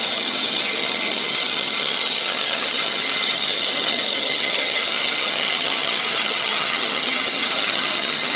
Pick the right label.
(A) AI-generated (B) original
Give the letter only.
A